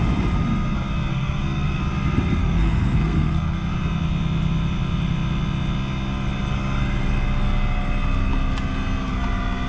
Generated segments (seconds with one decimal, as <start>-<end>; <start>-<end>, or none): 1.1-1.8; 2.4-3.7

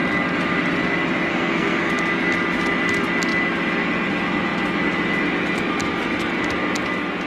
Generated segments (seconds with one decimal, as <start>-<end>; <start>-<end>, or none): 1.3-1.9

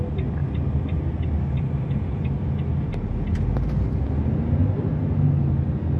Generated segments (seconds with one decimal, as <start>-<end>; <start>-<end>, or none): none

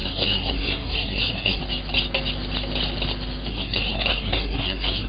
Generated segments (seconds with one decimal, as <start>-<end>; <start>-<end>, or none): 0.0-1.6; 3.5-5.1

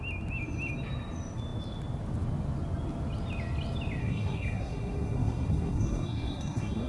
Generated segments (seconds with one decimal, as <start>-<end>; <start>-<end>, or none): 4.0-6.9